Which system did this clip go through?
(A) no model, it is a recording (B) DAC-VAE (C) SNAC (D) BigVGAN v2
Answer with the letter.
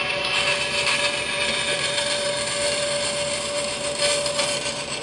A